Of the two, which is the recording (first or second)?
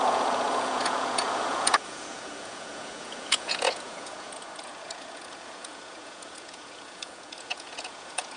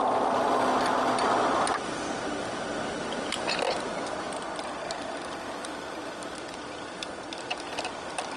second